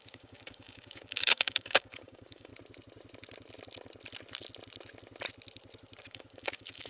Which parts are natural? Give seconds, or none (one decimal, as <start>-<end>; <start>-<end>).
2.5-6.0